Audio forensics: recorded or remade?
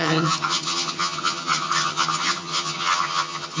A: remade